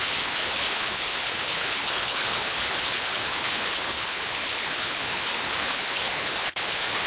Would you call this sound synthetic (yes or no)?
yes